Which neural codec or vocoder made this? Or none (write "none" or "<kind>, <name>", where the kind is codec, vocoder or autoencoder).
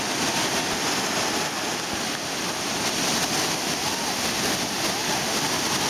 none